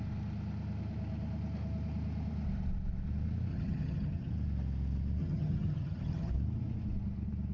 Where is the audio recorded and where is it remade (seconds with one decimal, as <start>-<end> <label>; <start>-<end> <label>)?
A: 0.0-3.5 recorded; 3.5-4.3 remade; 4.3-5.2 recorded; 5.2-6.3 remade; 6.3-7.5 recorded